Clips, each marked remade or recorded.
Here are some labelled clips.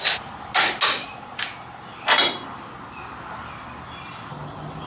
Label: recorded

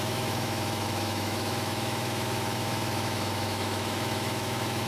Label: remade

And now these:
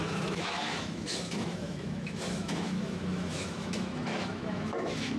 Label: remade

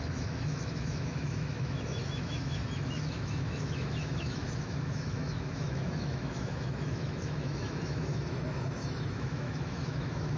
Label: remade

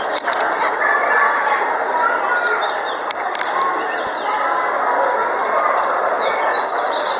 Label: recorded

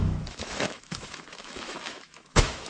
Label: remade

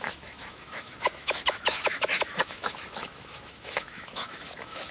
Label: remade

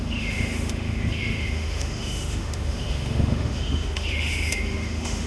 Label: remade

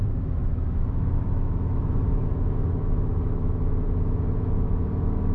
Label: remade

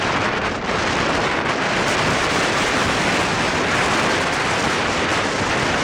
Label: recorded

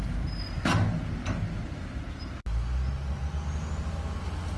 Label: recorded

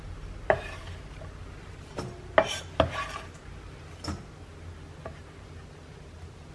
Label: recorded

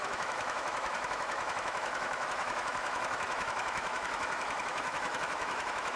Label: remade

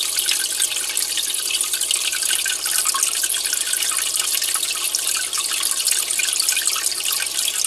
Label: recorded